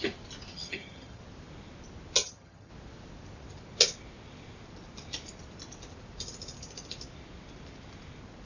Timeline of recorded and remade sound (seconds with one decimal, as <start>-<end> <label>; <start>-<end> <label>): 0.0-0.5 recorded; 0.5-1.2 remade; 1.2-2.2 recorded; 2.2-2.7 remade; 2.7-8.5 recorded